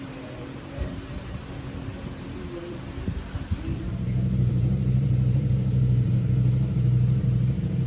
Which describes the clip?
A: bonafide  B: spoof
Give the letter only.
B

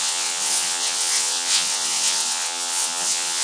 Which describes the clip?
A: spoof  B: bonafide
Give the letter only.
A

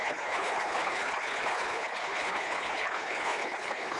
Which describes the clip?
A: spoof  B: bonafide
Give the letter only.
A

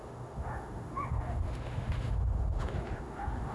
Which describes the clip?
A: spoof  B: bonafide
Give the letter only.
A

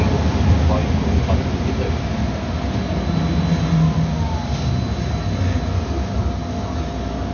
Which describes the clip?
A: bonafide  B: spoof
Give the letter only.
A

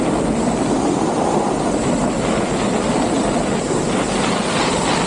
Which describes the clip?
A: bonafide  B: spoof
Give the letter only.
A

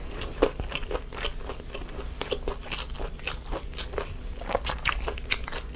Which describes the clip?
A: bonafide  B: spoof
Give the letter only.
A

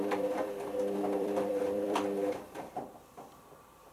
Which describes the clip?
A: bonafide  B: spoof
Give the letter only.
B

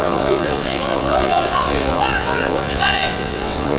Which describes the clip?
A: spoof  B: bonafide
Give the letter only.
A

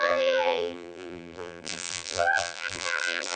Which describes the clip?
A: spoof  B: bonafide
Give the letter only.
A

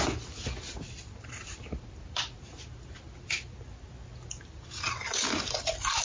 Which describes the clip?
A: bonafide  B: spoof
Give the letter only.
A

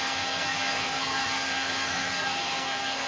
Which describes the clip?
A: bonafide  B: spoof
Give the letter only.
B